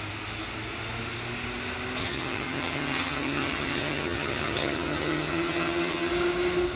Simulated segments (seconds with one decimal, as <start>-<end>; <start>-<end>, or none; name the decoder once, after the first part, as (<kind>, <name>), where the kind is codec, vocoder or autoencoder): 2.0-6.1 (vocoder, HiFi-GAN)